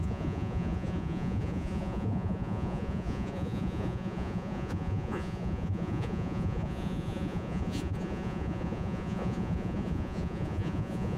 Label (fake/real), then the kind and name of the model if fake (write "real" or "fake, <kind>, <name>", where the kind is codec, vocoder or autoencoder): fake, vocoder, Vocos